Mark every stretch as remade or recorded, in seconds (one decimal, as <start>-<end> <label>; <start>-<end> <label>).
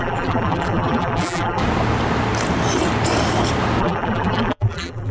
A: 0.0-1.6 remade; 1.6-3.8 recorded; 3.8-5.1 remade